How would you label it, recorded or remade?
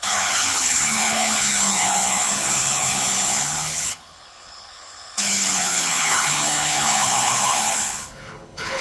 remade